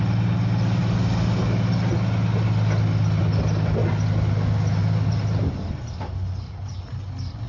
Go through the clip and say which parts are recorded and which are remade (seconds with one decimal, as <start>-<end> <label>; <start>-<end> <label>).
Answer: 0.0-7.5 recorded